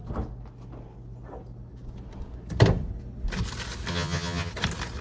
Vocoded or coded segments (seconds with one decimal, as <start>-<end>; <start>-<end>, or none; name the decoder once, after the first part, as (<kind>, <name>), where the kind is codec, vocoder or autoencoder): 3.9-4.5 (vocoder, HiFi-GAN)